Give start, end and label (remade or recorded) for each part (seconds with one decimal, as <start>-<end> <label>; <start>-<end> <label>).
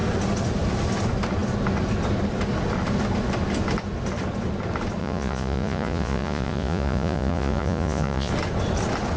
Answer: 0.0-5.0 recorded; 5.0-8.3 remade; 8.3-9.2 recorded